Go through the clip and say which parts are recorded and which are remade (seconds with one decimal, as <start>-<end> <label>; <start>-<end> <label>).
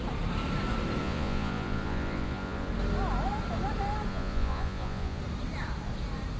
0.0-1.0 recorded; 1.0-2.7 remade; 2.7-4.1 recorded; 4.1-5.2 remade; 5.2-6.4 recorded